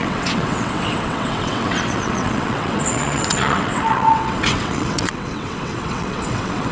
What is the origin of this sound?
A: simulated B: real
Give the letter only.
A